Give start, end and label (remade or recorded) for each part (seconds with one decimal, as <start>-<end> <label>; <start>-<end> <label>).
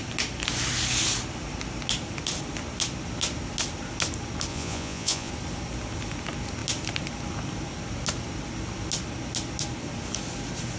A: 0.0-4.5 recorded; 4.5-5.3 remade; 5.3-10.8 recorded